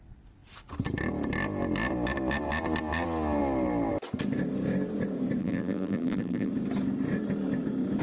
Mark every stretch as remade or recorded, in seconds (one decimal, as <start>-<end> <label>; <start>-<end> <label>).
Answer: 0.0-5.4 recorded; 5.4-6.5 remade; 6.5-8.0 recorded